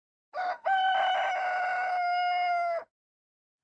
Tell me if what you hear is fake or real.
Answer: real